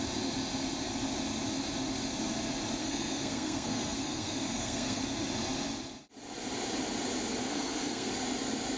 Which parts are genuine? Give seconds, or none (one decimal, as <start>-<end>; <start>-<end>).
0.0-2.8; 5.0-7.4; 8.1-8.8

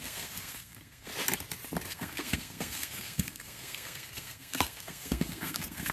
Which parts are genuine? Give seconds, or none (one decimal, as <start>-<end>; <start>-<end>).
1.1-1.9

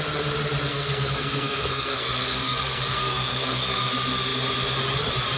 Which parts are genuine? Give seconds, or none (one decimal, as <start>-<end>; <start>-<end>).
0.0-0.7; 3.9-5.4

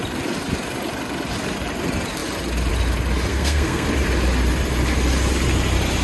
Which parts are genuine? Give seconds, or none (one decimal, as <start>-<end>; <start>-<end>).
0.0-3.3; 3.9-6.0